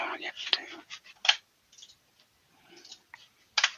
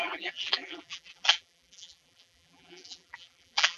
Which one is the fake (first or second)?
second